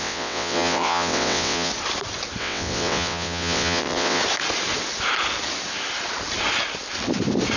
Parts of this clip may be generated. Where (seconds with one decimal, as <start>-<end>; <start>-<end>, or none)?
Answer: 0.0-1.7; 2.4-4.2